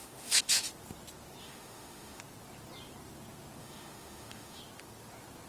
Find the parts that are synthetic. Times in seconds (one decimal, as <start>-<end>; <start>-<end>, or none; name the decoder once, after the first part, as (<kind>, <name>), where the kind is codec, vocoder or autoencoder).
0.0-0.7 (autoencoder, DAC-VAE); 1.4-2.2; 3.6-4.6